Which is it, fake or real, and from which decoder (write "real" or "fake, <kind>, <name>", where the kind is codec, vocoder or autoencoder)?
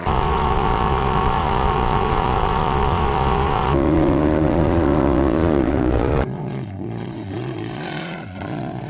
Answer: fake, vocoder, Vocos